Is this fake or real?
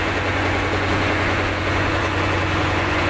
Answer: fake